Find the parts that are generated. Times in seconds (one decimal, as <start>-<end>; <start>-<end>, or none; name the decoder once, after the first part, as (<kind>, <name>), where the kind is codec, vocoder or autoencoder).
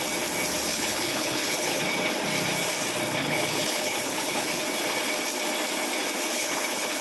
0.7-1.8 (codec, HILCodec); 3.2-4.6; 6.3-7.0